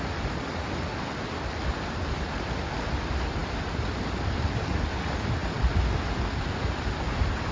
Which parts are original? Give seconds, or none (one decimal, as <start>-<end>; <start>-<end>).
0.0-7.5